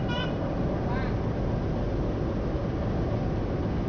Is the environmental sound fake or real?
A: real